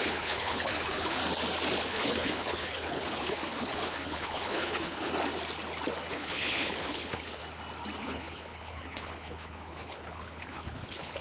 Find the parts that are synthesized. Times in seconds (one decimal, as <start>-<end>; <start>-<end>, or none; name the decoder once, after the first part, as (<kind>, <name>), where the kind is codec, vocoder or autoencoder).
0.0-1.2 (codec, HILCodec); 1.8-5.1; 6.1-7.4; 8.0-11.2